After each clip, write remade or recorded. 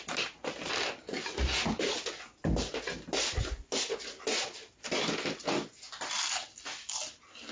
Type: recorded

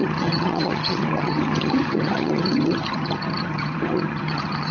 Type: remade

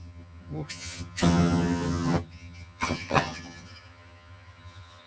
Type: remade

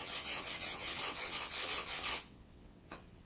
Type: remade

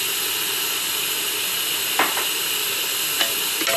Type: recorded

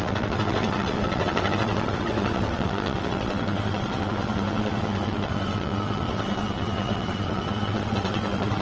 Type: remade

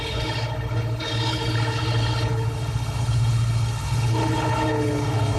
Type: remade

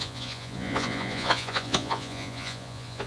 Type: remade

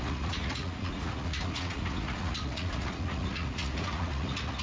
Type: remade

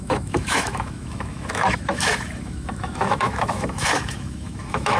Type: remade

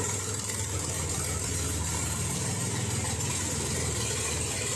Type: remade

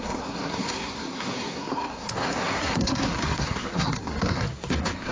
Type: remade